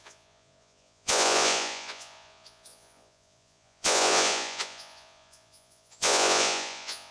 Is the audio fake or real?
fake